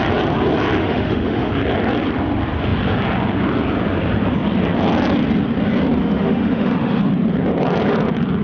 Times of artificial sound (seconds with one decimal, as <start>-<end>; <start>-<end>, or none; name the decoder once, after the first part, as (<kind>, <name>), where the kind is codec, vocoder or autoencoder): 0.8-1.5 (autoencoder, DAC-VAE); 6.0-7.0

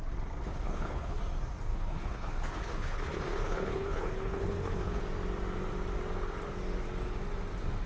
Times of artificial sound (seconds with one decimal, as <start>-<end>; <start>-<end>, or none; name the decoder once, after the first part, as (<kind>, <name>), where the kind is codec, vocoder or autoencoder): 0.4-1.2 (codec, HILCodec); 1.7-5.0